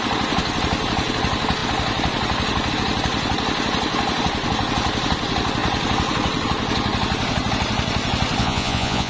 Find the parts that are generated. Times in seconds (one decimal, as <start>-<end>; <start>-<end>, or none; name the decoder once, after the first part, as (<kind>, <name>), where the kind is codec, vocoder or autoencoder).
8.4-9.1 (vocoder, Vocos)